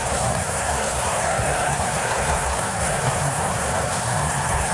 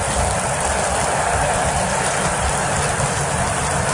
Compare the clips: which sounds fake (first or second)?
first